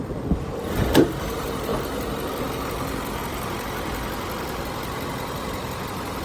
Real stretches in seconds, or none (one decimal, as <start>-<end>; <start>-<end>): 1.7-2.4; 3.2-5.8